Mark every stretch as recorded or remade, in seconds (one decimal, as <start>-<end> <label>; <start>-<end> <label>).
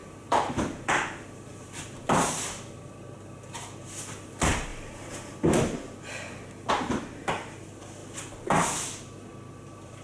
0.0-8.0 remade; 8.0-9.6 recorded; 9.6-10.0 remade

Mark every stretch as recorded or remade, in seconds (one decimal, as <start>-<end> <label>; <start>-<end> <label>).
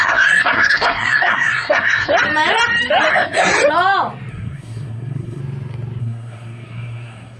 0.0-2.1 remade; 2.1-3.1 recorded; 3.1-3.5 remade; 3.5-4.3 recorded; 4.3-5.4 remade; 5.4-6.0 recorded; 6.0-7.4 remade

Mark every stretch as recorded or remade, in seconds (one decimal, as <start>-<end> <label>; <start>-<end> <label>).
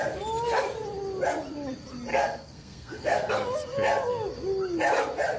0.0-2.1 recorded; 2.1-3.3 remade; 3.3-5.4 recorded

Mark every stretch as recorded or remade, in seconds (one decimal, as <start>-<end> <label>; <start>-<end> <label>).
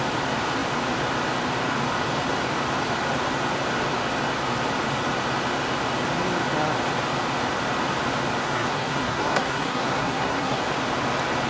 0.0-8.4 recorded; 8.4-10.6 remade; 10.6-11.5 recorded